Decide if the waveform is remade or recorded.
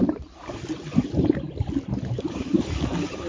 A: recorded